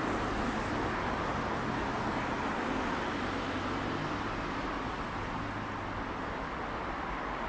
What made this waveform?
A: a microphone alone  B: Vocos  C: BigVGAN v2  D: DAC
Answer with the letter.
A